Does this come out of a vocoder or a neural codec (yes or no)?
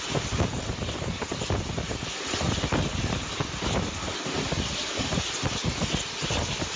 no